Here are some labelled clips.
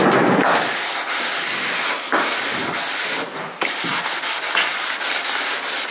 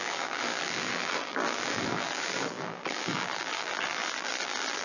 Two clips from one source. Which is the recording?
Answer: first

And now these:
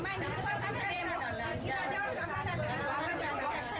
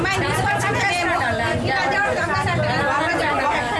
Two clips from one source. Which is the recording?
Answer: second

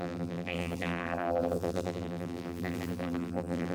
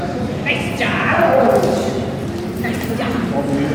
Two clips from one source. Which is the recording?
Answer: second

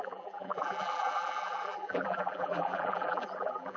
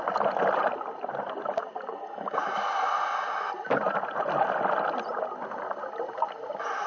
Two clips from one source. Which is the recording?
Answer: second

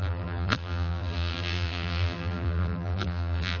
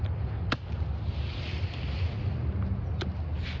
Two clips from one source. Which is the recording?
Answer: second